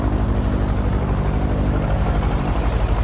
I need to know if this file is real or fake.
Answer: fake